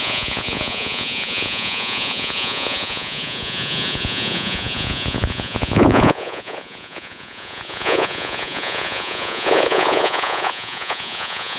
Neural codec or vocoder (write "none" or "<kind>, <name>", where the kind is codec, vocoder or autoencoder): vocoder, Vocos